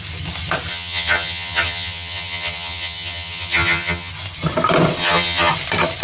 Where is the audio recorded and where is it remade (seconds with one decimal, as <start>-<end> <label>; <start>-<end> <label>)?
0.0-0.7 recorded; 0.7-4.1 remade; 4.1-5.0 recorded; 5.0-5.5 remade; 5.5-6.0 recorded